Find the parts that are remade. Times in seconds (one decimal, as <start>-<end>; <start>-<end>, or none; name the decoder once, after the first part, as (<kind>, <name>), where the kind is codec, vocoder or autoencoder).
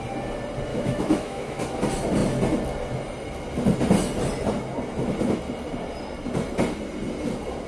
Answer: 0.7-1.6 (autoencoder, DAC-VAE)